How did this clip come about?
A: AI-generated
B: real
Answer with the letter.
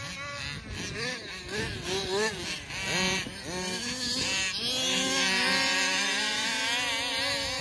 B